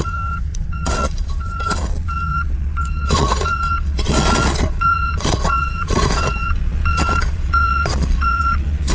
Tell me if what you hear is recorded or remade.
remade